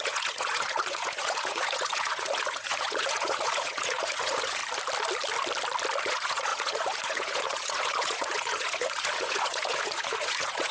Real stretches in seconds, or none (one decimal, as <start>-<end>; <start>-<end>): 4.6-6.0

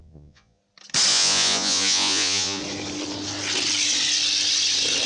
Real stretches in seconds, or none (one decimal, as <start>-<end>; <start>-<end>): 0.6-1.1; 2.6-5.1

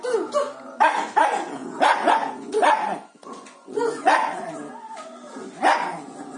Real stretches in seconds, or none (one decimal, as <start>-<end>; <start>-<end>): 0.0-1.6; 4.5-6.4